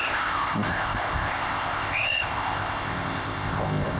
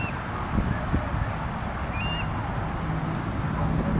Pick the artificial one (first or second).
first